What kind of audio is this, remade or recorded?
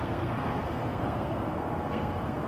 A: remade